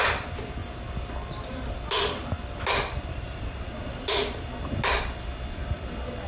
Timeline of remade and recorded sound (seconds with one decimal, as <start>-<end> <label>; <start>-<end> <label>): 0.0-6.3 recorded